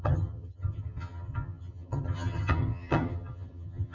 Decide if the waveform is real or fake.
fake